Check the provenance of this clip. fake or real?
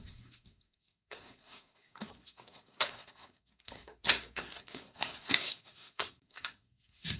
fake